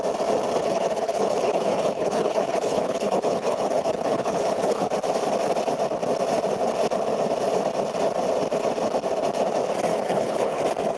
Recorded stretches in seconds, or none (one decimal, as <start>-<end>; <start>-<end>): 0.0-0.6; 4.9-9.9; 10.6-11.0